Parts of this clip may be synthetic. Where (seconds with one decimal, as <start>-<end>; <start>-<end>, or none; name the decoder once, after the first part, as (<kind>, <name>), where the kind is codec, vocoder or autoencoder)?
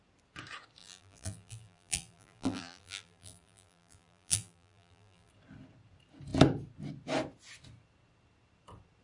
0.8-5.3 (vocoder, BigVGAN v2)